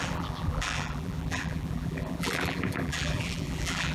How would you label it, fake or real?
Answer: fake